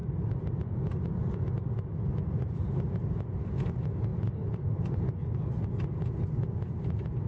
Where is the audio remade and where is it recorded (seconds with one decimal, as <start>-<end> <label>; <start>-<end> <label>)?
0.0-7.3 recorded